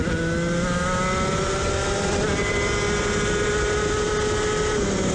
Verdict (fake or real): real